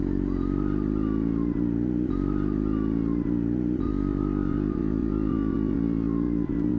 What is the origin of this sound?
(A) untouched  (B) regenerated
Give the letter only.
A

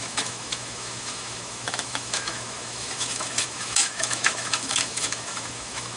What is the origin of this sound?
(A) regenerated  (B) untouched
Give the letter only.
A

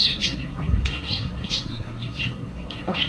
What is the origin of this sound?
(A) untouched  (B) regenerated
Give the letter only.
B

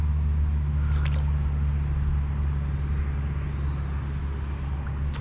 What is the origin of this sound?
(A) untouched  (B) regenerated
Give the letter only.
A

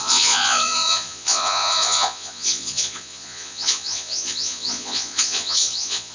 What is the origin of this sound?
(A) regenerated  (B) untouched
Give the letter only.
A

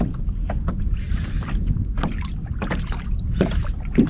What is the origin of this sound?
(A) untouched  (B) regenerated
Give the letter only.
A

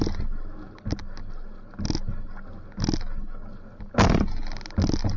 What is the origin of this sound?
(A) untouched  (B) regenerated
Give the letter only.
A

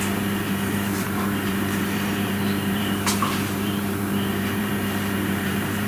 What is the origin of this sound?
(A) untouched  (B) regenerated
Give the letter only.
B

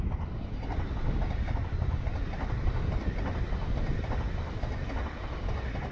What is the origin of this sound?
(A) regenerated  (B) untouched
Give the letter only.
B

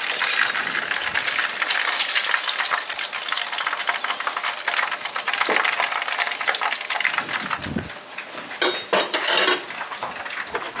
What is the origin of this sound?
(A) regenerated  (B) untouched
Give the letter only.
B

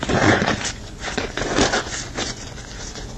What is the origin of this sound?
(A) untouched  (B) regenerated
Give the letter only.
B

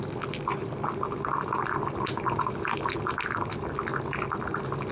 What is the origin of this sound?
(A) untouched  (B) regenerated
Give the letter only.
A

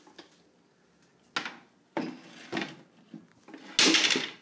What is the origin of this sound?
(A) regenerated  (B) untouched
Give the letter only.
B